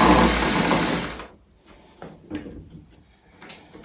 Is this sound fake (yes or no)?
no